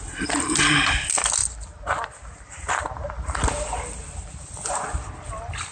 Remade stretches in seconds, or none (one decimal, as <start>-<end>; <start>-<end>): none

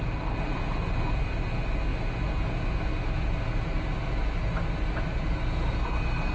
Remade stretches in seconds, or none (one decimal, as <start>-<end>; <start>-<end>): none

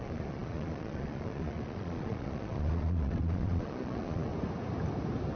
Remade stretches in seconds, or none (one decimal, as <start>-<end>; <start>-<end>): 0.0-4.3

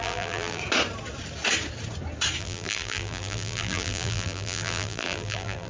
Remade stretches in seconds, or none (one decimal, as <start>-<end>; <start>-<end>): 0.0-0.6; 2.4-5.7

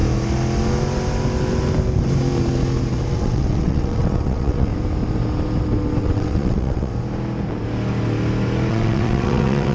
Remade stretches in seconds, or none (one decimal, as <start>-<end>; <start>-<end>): 3.1-4.7; 6.0-6.9; 8.7-9.7

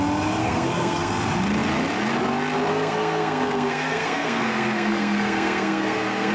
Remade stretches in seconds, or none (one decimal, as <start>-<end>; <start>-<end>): 0.4-1.1; 2.7-6.3

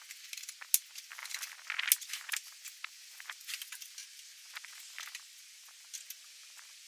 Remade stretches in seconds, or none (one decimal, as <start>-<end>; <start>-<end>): none

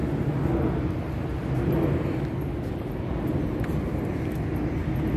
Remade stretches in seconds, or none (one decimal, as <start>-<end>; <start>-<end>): none